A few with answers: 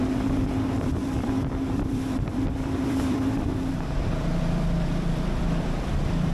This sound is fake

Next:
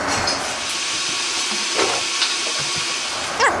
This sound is real